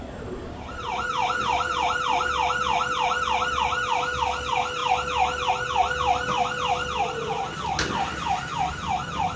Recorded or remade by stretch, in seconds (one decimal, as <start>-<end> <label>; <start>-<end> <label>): 0.0-0.4 recorded; 0.4-1.8 remade; 1.8-9.4 recorded